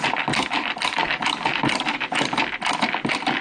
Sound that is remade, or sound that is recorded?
recorded